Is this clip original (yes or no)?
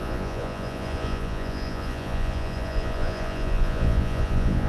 no